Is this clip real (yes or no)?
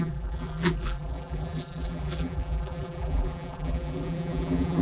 no